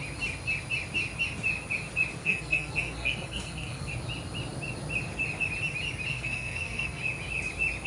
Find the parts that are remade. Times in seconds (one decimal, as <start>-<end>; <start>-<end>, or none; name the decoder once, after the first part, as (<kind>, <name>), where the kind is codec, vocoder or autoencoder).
2.2-3.9 (codec, SNAC); 6.1-7.0